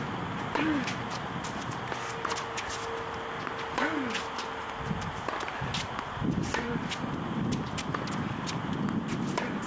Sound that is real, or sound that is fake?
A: real